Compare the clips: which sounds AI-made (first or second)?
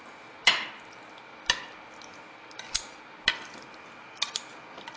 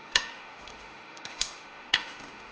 second